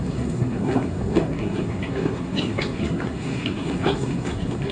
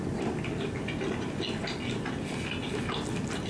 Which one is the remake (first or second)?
first